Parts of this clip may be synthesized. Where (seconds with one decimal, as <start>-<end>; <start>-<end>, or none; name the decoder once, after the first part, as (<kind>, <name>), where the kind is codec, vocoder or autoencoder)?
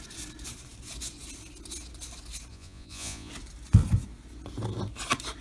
2.5-3.3 (vocoder, Vocos)